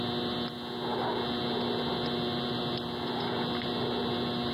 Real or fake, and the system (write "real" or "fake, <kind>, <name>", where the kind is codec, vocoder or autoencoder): real